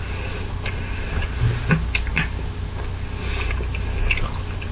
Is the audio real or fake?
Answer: real